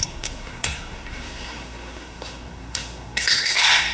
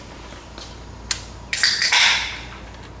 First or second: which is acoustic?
second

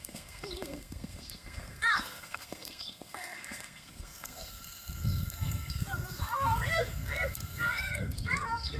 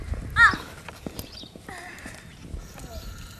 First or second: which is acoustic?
second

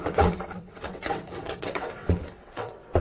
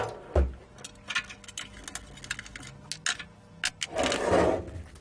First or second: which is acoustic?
second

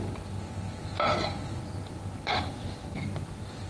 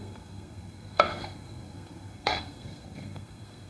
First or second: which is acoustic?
first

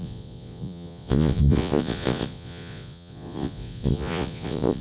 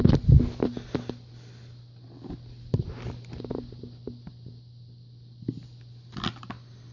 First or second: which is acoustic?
second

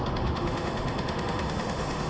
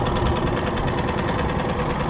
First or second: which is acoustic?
second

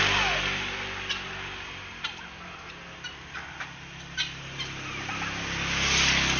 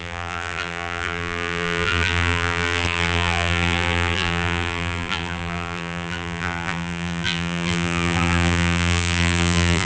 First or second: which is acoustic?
first